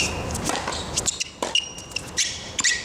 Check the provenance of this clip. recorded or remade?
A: recorded